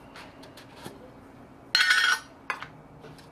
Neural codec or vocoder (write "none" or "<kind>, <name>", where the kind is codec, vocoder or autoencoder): none